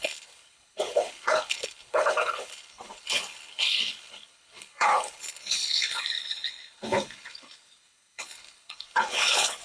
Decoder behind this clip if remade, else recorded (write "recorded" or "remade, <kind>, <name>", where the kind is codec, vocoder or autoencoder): remade, codec, HILCodec